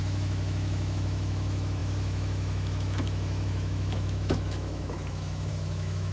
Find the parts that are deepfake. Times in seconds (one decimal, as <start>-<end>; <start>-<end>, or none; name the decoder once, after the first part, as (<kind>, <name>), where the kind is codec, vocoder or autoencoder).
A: 0.0-6.1 (autoencoder, DAC-VAE)